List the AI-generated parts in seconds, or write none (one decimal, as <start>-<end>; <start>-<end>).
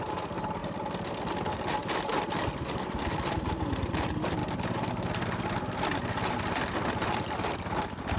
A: none